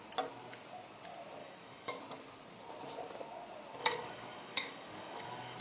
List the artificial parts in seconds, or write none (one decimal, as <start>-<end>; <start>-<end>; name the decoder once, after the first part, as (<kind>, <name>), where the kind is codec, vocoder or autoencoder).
1.4-2.0 (codec, DAC); 3.8-5.6